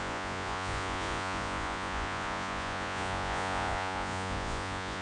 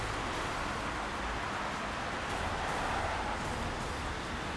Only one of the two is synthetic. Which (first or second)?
first